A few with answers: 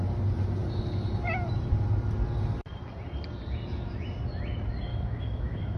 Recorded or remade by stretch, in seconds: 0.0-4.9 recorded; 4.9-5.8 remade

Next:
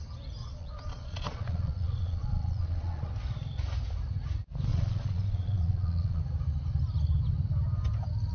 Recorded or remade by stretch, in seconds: 0.0-0.4 recorded; 0.4-3.1 remade; 3.1-4.7 recorded; 4.7-6.2 remade; 6.2-8.3 recorded

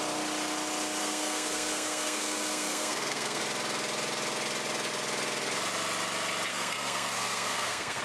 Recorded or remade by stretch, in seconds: 0.0-1.0 recorded; 1.0-3.4 remade; 3.4-6.5 recorded; 6.5-8.0 remade

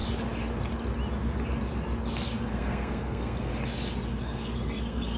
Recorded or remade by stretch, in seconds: 0.0-2.4 recorded; 2.4-3.5 remade; 3.5-4.2 recorded; 4.2-5.2 remade